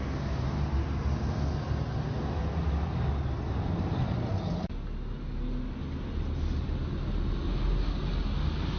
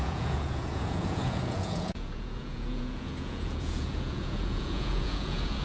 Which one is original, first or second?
first